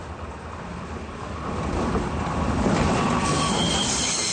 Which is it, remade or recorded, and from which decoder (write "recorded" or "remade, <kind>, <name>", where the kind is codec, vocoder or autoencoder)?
recorded